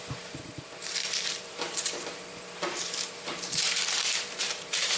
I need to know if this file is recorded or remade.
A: remade